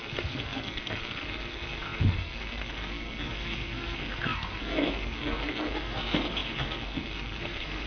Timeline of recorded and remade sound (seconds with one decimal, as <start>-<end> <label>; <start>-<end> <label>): 0.0-7.9 remade